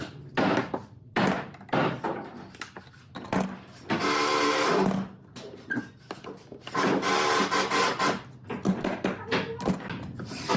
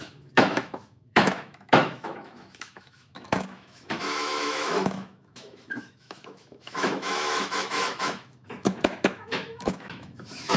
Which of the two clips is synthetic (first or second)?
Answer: second